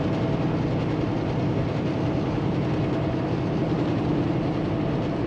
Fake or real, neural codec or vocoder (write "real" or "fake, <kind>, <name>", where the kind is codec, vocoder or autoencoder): real